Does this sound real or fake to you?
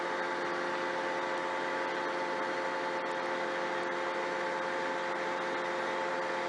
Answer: real